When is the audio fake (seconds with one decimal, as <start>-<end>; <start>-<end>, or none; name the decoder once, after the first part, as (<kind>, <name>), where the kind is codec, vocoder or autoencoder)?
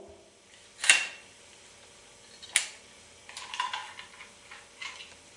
none